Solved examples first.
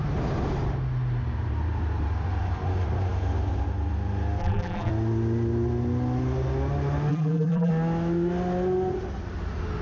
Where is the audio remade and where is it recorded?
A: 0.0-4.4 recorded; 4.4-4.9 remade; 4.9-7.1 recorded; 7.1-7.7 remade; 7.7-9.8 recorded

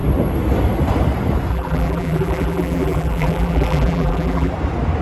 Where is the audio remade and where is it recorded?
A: 0.0-1.5 recorded; 1.5-4.5 remade; 4.5-5.0 recorded

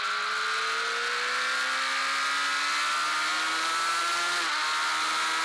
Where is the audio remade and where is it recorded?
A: 0.0-5.4 recorded

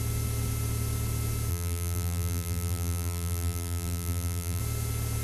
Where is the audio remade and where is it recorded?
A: 0.0-1.5 recorded; 1.5-4.6 remade; 4.6-5.2 recorded

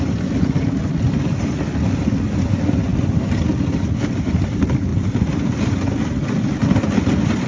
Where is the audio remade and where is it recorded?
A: 0.0-2.9 recorded; 2.9-4.2 remade; 4.2-4.9 recorded; 4.9-5.6 remade; 5.6-7.5 recorded

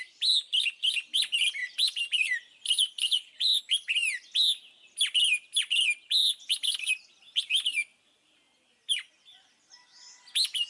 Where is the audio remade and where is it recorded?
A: 0.0-1.6 recorded; 1.6-3.6 remade; 3.6-6.2 recorded; 6.2-6.9 remade; 6.9-7.9 recorded; 7.9-9.1 remade; 9.1-10.7 recorded

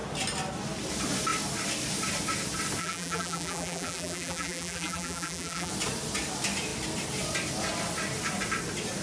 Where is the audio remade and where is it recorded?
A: 0.0-2.8 recorded; 2.8-5.7 remade; 5.7-9.0 recorded